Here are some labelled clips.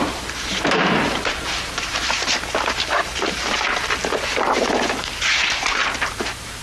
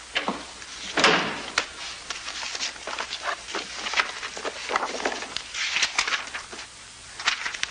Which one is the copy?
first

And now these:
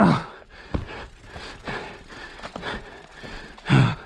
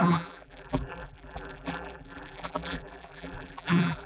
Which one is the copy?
second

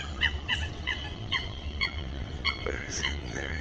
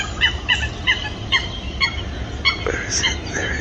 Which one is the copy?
first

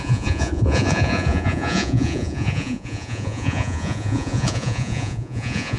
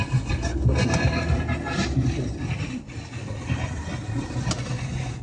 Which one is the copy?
first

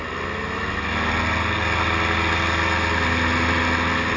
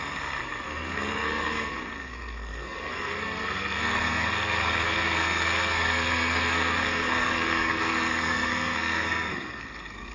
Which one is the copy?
second